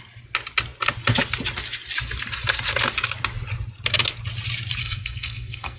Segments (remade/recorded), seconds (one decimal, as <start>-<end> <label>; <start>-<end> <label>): 0.0-4.8 recorded; 4.8-5.8 remade